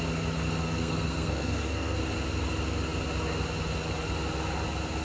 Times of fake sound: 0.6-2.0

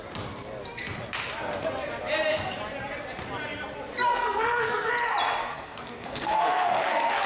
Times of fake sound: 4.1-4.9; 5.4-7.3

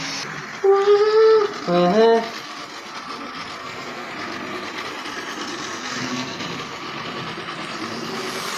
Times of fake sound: 3.6-4.1; 5.9-6.4

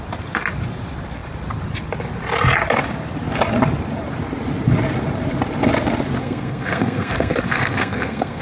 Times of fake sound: 6.2-8.4

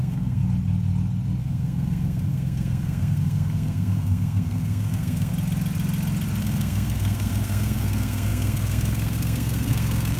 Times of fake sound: 0.0-0.4; 1.4-5.3; 6.4-10.2

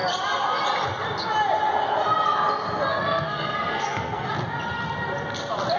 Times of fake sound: 2.9-4.3